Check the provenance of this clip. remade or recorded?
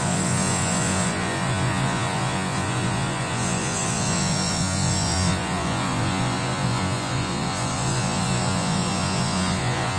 remade